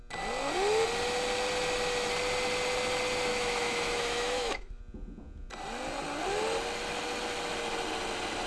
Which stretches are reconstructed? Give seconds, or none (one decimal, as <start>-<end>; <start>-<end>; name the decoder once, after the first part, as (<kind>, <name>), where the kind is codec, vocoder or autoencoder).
3.3-4.8 (autoencoder, DAC-VAE)